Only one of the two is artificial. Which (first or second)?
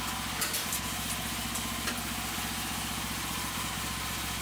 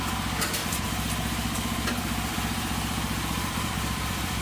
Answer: second